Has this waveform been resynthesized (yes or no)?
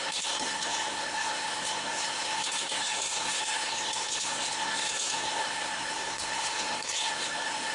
yes